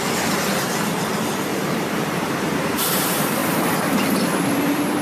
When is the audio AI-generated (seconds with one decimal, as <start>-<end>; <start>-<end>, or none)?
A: 1.5-2.8